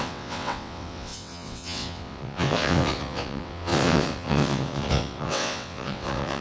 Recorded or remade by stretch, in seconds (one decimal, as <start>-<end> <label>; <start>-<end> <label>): 0.0-6.4 remade